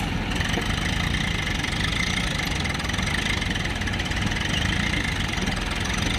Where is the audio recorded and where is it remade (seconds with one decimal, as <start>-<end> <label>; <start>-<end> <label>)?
0.0-6.2 recorded

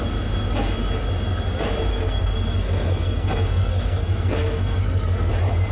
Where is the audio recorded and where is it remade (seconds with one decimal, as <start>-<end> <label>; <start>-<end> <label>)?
0.0-1.9 recorded; 1.9-5.3 remade; 5.3-5.7 recorded